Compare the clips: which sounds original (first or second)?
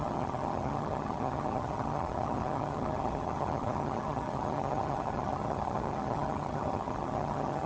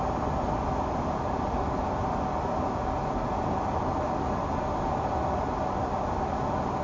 second